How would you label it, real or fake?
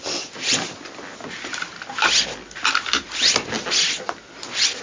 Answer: real